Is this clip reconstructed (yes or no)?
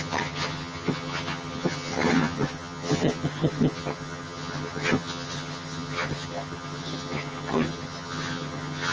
yes